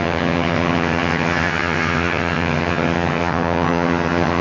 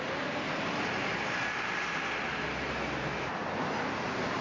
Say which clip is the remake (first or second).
first